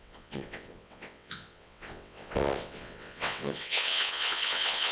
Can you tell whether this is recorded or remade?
remade